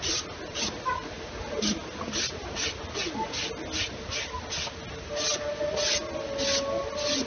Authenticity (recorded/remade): recorded